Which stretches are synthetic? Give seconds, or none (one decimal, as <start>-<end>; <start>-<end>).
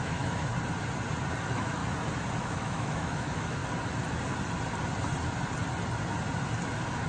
0.0-0.5; 1.4-1.8; 2.4-3.6